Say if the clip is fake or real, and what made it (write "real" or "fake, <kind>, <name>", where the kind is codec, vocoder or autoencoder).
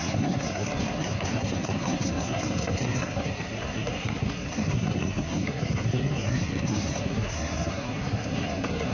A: fake, codec, SNAC